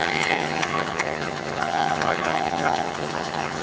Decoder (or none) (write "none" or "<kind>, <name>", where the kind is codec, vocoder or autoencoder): vocoder, HiFi-GAN